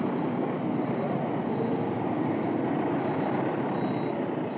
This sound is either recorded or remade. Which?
recorded